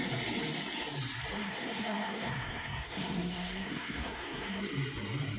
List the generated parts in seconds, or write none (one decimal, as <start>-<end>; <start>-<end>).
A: 1.4-4.6